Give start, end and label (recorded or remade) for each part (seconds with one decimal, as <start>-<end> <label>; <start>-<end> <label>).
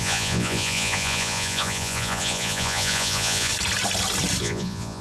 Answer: 0.0-3.5 remade; 3.5-4.4 recorded; 4.4-5.0 remade